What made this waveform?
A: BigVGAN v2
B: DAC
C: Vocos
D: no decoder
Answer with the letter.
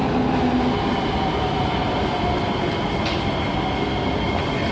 D